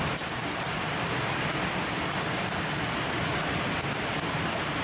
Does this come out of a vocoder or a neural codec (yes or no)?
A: no